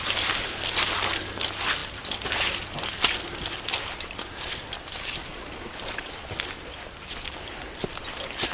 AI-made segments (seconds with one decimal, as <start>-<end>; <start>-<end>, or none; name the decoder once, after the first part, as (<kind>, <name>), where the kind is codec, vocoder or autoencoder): 5.2-5.9 (codec, DAC)

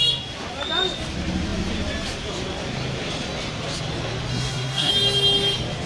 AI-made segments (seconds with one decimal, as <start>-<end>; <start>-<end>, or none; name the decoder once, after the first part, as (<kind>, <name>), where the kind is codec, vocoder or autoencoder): 4.3-4.9 (codec, SNAC)

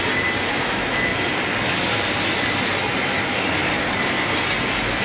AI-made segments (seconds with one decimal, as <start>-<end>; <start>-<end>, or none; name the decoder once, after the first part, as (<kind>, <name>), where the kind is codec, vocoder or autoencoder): none

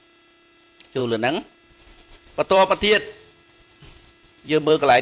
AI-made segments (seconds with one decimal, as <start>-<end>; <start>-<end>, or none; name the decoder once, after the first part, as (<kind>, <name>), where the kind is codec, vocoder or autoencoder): 0.0-1.0 (vocoder, BigVGAN v2); 1.8-5.0

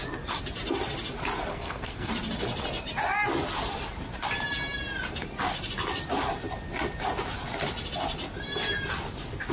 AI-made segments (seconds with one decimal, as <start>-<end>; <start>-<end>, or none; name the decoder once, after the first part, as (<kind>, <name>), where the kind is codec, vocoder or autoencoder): 1.5-2.1 (codec, SNAC)